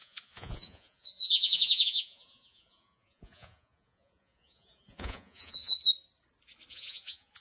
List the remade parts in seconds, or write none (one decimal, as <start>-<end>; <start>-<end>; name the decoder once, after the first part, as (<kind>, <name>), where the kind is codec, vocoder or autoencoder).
0.0-5.7 (vocoder, Vocos); 6.7-7.4